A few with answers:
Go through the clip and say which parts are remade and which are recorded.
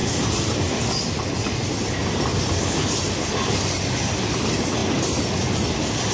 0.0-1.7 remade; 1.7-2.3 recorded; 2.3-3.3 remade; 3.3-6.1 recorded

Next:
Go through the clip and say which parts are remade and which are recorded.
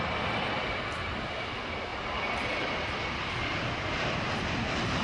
0.0-5.0 remade